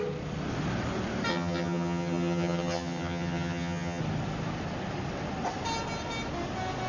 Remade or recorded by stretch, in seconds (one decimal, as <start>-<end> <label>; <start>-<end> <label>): 0.0-1.3 recorded; 1.3-4.0 remade; 4.0-6.9 recorded